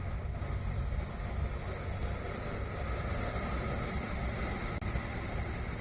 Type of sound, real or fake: real